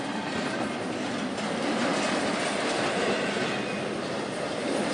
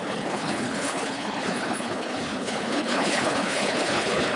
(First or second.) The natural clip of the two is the first